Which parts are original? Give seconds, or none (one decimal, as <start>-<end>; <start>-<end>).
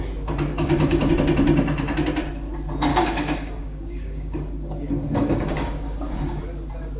0.0-0.5; 1.1-2.9; 6.4-7.0